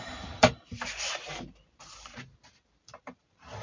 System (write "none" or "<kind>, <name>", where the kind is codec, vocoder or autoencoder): vocoder, BigVGAN v2